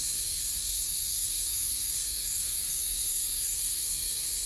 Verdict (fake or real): fake